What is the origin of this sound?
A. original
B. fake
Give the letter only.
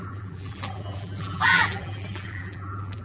B